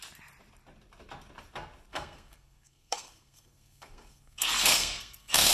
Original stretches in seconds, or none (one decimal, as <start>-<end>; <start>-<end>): 0.0-1.9